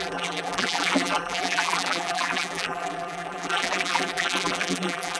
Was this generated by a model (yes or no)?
yes